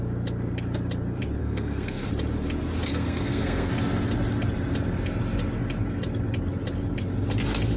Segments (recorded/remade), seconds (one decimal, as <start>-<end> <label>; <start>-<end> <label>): 0.0-1.4 recorded; 1.4-2.1 remade; 2.1-2.9 recorded; 2.9-3.7 remade; 3.7-7.8 recorded